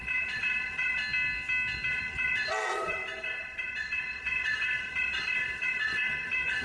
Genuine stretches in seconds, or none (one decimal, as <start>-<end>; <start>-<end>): 1.0-1.9